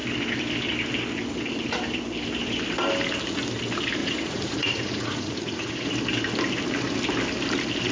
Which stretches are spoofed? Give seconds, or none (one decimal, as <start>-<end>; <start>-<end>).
4.0-5.9